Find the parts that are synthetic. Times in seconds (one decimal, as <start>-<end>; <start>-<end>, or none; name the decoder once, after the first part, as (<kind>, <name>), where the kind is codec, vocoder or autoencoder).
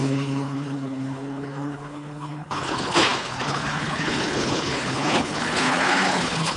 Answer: 0.0-6.6 (codec, HILCodec)